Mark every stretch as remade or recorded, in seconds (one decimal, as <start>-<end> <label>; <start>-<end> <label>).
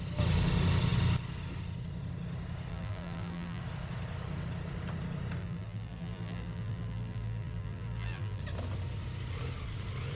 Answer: 0.0-2.7 recorded; 2.7-3.6 remade; 3.6-5.4 recorded; 5.4-8.4 remade; 8.4-10.2 recorded